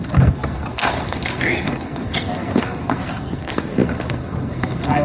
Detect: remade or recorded remade